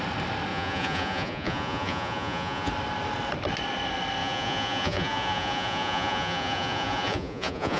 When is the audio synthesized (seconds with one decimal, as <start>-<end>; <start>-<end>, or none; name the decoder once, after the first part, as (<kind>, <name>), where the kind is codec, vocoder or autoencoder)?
0.5-2.7 (vocoder, Vocos); 4.2-7.8